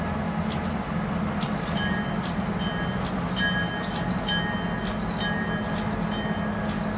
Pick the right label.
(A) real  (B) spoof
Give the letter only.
A